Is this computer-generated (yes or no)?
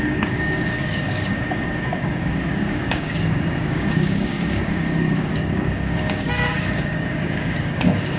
yes